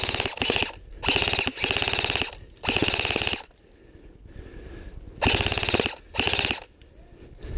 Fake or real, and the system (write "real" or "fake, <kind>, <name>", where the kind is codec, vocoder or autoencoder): real